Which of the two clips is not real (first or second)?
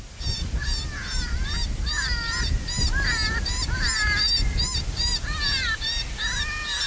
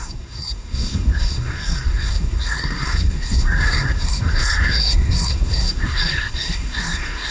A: second